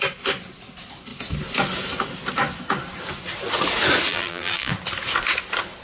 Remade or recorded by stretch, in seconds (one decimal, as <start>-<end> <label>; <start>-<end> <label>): 0.0-4.1 recorded; 4.1-4.7 remade; 4.7-5.8 recorded

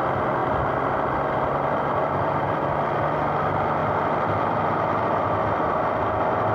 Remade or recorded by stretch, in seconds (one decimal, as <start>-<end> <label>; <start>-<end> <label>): 0.0-0.4 recorded; 0.4-2.6 remade; 2.6-3.8 recorded; 3.8-5.7 remade; 5.7-6.5 recorded

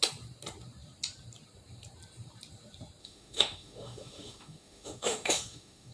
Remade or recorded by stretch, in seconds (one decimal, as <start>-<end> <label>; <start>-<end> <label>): 0.0-3.0 recorded; 3.0-5.9 remade

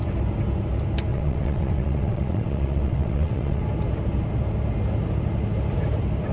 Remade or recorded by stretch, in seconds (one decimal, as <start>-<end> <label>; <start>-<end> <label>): 0.0-1.1 recorded; 1.1-3.6 remade; 3.6-6.3 recorded

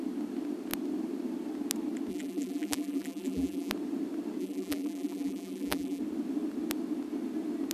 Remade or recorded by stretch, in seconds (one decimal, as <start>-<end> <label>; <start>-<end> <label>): 0.0-2.1 recorded; 2.1-3.7 remade; 3.7-4.4 recorded; 4.4-6.0 remade; 6.0-7.7 recorded

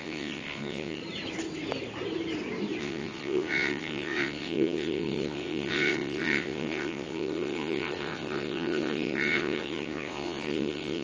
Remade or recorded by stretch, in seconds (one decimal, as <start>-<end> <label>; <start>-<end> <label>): 0.0-1.0 remade; 1.0-2.8 recorded; 2.8-11.0 remade

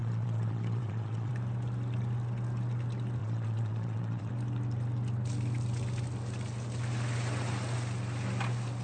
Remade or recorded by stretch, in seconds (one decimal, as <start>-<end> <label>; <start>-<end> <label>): 0.0-1.3 remade; 1.3-3.2 recorded; 3.2-4.3 remade; 4.3-8.8 recorded

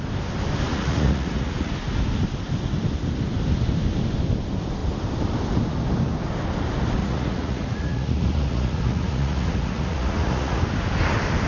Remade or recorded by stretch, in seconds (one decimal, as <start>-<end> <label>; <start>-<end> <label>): 0.0-0.7 recorded; 0.7-1.7 remade; 1.7-7.0 recorded; 7.0-10.6 remade; 10.6-11.5 recorded